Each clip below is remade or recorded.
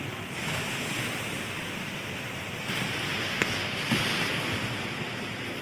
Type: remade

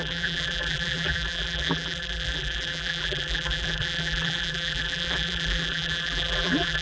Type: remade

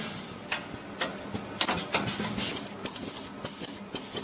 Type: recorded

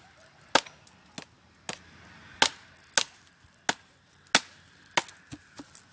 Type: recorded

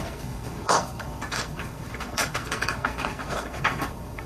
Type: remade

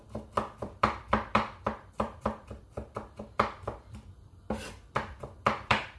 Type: remade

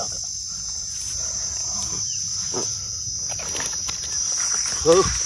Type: recorded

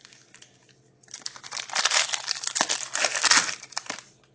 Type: recorded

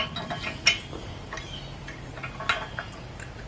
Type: recorded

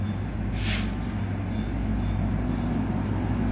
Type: recorded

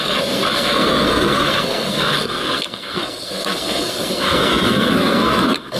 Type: remade